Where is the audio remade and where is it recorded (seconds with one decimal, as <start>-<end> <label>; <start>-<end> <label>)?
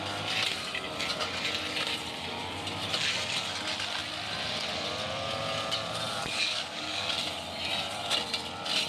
0.0-6.1 recorded; 6.1-7.1 remade; 7.1-8.9 recorded